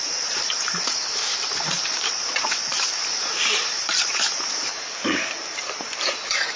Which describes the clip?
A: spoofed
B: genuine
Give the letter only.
A